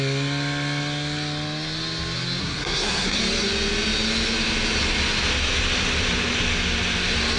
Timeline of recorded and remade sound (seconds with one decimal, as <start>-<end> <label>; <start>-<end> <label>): 0.0-2.4 recorded; 2.4-3.2 remade; 3.2-7.4 recorded